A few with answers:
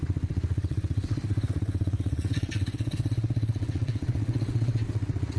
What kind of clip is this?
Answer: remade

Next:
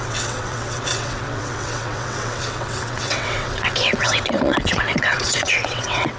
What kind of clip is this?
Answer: remade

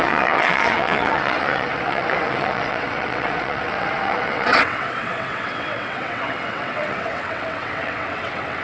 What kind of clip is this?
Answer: remade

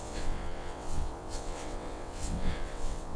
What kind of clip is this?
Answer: remade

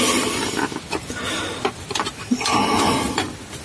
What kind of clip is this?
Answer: recorded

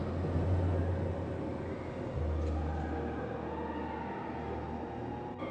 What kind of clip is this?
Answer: recorded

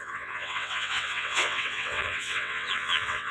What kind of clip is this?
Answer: remade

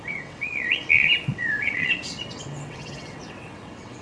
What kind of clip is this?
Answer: remade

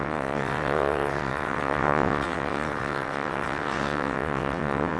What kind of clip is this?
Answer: remade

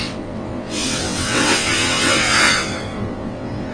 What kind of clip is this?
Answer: remade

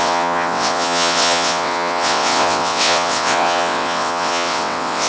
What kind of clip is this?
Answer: remade